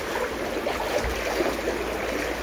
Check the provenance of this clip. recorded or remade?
recorded